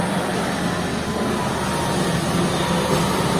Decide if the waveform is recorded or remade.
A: recorded